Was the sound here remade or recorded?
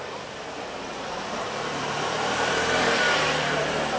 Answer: remade